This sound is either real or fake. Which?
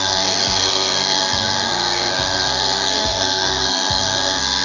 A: fake